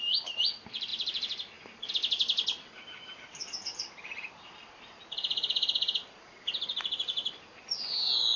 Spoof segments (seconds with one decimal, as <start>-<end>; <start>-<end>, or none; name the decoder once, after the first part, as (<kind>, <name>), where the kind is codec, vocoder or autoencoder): none